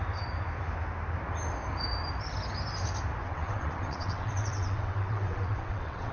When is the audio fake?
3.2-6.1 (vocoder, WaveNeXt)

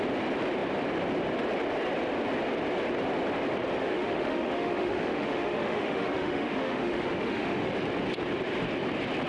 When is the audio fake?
3.8-7.7 (autoencoder, DAC-VAE)

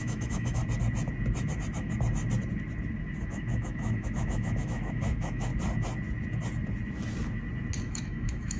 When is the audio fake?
0.0-0.6 (autoencoder, DAC-VAE); 3.2-5.5; 7.8-8.6

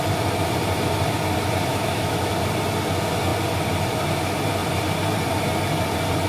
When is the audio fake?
1.7-2.3 (autoencoder, DAC-VAE)

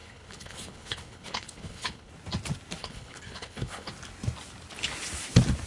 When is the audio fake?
0.0-2.1 (codec, HILCodec); 2.8-3.9

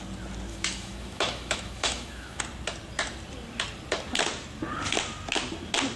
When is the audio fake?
0.5-2.4 (autoencoder, DAC-VAE)